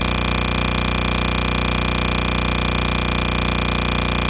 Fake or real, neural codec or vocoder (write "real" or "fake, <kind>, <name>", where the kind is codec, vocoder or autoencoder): real